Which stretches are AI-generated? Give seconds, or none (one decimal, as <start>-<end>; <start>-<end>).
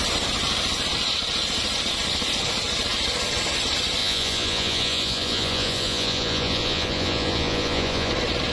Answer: 4.0-8.1